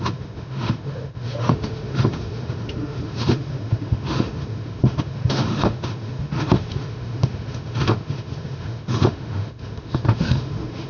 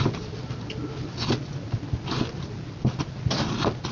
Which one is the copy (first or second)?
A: first